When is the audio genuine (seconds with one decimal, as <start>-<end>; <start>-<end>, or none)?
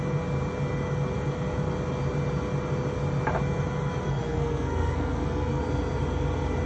0.0-4.1; 5.6-6.7